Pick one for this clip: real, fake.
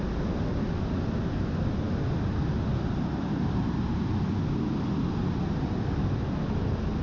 real